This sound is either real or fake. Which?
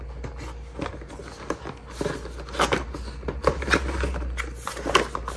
real